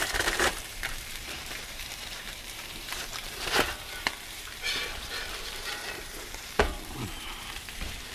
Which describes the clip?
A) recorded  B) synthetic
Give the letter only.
B